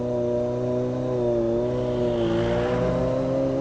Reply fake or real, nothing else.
real